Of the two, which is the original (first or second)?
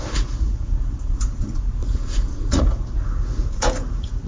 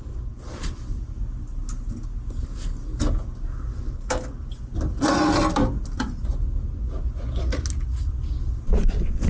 second